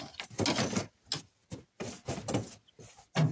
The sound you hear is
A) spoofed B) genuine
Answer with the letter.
B